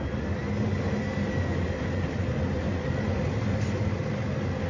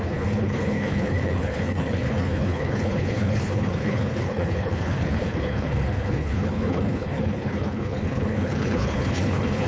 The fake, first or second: second